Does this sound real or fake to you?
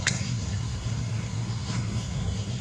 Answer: fake